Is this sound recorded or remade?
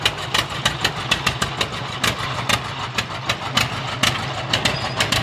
recorded